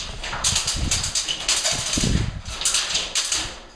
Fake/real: real